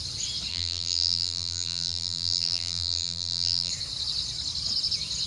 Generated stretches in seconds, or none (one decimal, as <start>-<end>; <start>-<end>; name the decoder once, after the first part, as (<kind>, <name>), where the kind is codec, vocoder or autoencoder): 0.5-3.7 (vocoder, BigVGAN v2)